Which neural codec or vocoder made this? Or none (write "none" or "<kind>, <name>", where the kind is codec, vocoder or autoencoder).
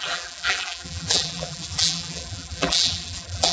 vocoder, BigVGAN v2